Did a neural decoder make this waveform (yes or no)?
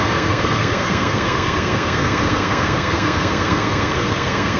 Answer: yes